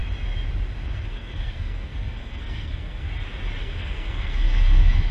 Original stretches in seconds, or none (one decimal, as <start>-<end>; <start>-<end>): 0.0-0.9; 3.1-3.6